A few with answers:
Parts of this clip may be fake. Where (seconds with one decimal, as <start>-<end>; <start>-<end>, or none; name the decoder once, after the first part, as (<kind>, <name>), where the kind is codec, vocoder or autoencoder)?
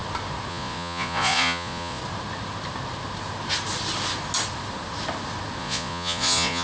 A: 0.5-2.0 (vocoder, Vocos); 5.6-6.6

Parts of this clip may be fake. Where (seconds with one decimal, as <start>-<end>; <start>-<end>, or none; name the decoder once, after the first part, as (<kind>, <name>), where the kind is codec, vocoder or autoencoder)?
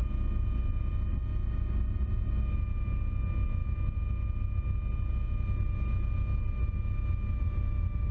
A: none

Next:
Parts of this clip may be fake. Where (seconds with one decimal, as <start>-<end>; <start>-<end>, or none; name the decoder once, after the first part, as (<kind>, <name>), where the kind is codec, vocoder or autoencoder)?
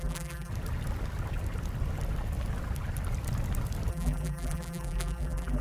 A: 0.0-0.5 (vocoder, BigVGAN v2); 3.9-5.6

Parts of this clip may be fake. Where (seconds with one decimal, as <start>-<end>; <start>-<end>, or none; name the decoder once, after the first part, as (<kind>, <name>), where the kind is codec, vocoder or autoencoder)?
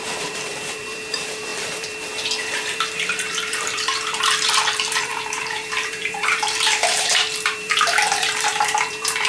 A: 0.0-9.3 (vocoder, BigVGAN v2)